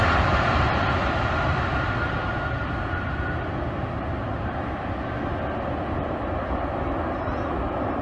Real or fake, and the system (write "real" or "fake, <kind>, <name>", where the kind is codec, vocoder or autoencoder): real